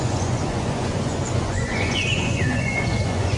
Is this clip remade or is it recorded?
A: remade